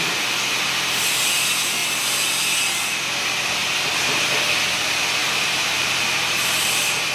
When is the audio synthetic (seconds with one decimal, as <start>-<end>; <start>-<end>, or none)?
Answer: 5.2-7.1